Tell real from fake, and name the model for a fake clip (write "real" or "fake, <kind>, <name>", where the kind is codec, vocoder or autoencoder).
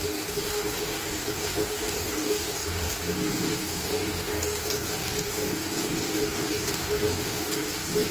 fake, codec, DAC